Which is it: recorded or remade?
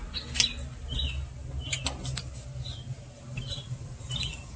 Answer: recorded